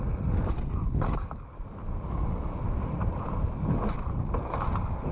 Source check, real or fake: real